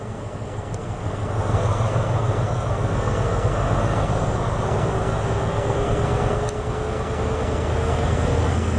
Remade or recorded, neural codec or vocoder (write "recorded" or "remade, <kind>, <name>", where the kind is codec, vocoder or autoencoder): remade, codec, SNAC